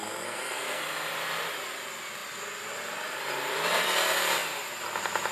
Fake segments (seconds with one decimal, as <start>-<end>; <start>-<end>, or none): 0.0-0.8